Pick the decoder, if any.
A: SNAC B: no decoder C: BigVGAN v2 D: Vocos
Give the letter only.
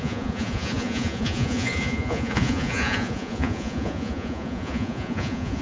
D